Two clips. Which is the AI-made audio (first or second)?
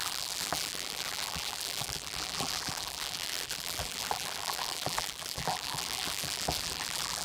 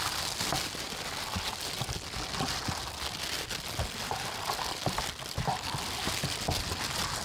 first